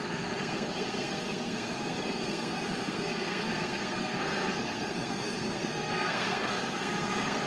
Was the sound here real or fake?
fake